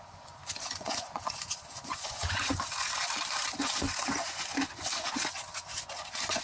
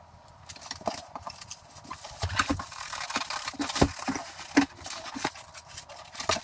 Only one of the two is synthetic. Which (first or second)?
first